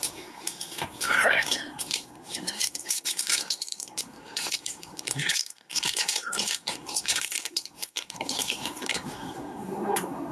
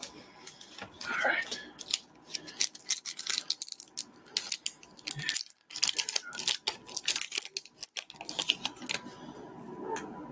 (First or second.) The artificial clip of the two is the first